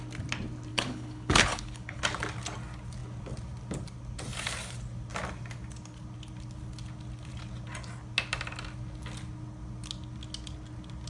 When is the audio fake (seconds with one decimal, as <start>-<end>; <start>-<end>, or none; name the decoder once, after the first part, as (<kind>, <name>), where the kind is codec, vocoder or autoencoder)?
0.7-2.0 (codec, HILCodec)